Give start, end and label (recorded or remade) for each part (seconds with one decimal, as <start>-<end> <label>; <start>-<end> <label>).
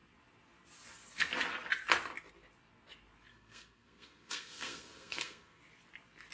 0.0-3.3 recorded; 3.3-5.6 remade; 5.6-6.3 recorded